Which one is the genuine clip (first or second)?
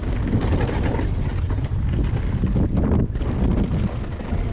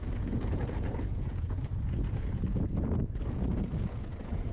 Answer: first